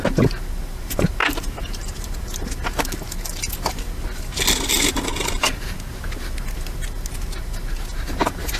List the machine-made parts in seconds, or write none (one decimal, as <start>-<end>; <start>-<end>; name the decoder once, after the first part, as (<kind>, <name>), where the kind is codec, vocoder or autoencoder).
1.2-1.9 (vocoder, BigVGAN v2); 5.1-5.9